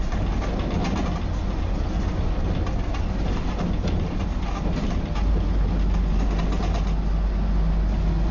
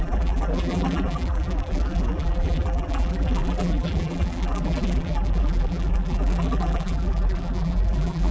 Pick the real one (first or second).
first